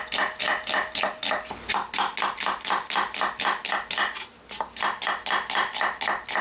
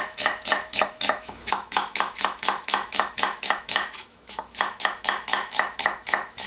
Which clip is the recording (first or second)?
first